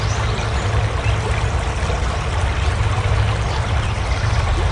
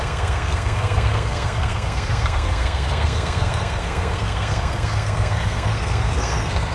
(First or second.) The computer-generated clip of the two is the second